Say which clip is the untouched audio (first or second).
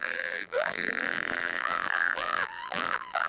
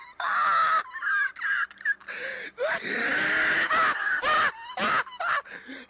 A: second